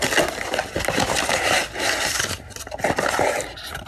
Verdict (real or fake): real